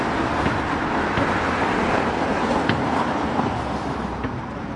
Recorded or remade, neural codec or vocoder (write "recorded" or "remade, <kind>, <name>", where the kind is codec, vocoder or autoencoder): remade, vocoder, BigVGAN v2